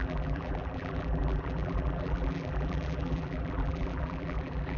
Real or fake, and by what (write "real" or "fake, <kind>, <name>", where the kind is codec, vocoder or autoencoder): fake, vocoder, BigVGAN v2